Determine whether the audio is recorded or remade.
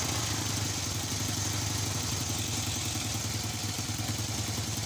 recorded